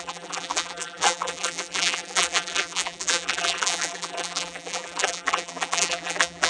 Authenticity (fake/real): fake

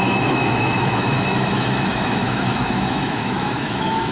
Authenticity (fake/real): fake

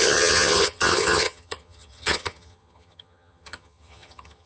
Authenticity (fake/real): fake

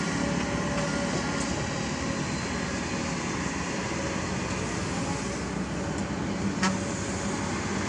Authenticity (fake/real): real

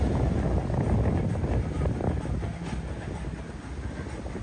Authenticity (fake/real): real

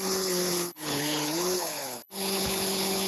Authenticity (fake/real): fake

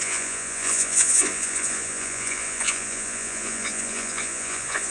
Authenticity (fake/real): fake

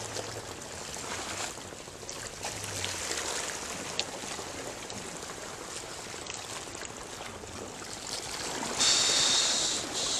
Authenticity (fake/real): real